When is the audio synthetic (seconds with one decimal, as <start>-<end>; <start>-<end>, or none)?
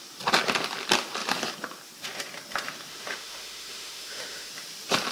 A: 2.9-4.5